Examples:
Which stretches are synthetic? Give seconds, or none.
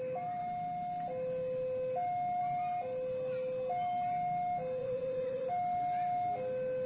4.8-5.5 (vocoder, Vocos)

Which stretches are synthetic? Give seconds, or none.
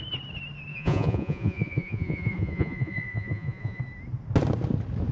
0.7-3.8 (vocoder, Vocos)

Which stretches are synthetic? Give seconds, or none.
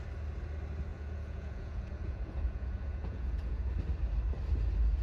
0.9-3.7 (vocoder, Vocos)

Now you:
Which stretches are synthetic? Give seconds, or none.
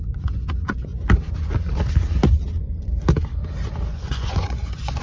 0.0-0.9 (vocoder, Vocos); 3.9-5.0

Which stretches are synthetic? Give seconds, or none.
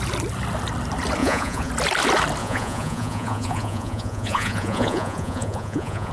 1.2-1.7 (vocoder, Vocos); 2.4-6.1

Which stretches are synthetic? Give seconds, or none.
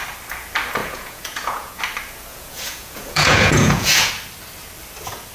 0.8-1.8 (vocoder, Vocos); 2.3-4.1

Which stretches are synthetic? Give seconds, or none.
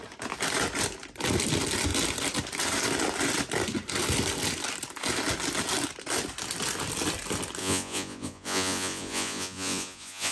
7.6-10.3 (vocoder, Vocos)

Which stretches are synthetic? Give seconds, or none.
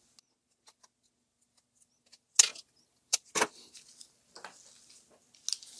none